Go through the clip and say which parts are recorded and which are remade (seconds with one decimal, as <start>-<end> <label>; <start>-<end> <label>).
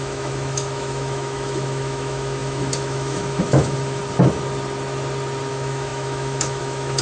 0.0-4.0 remade; 4.0-5.5 recorded; 5.5-7.0 remade